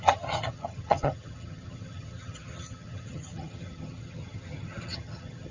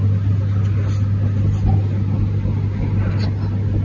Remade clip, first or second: first